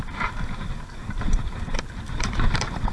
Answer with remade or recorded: remade